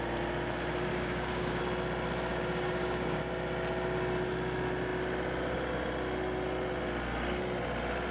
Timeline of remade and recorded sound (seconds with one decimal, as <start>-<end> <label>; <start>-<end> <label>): 0.0-0.9 recorded; 0.9-1.6 remade; 1.6-2.3 recorded; 2.3-3.2 remade; 3.2-8.1 recorded